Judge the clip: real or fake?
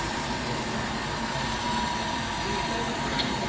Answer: real